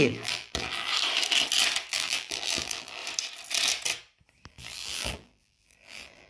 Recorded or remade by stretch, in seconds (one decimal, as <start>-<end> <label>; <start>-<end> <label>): 0.0-0.9 remade; 0.9-1.9 recorded; 1.9-3.0 remade; 3.0-4.5 recorded; 4.5-6.3 remade